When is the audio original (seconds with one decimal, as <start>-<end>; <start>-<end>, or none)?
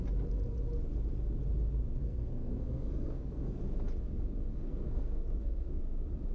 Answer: 0.0-2.0; 3.6-4.5; 5.8-6.3